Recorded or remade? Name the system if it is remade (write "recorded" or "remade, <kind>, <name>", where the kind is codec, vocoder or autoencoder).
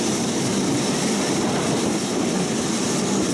recorded